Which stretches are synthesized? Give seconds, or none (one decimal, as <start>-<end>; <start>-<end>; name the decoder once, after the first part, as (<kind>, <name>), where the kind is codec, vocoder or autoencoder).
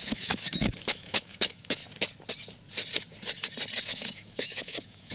0.0-1.8 (autoencoder, DAC-VAE); 3.8-5.1